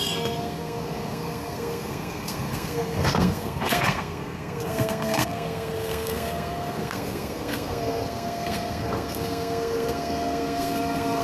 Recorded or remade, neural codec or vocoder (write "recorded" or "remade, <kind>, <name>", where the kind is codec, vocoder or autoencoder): remade, codec, SNAC